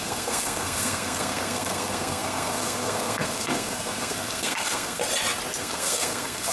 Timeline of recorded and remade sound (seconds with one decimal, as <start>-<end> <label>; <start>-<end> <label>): 0.0-5.0 remade; 5.0-5.6 recorded; 5.6-6.5 remade